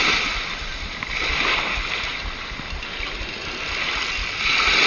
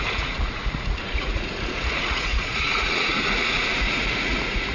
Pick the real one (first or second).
first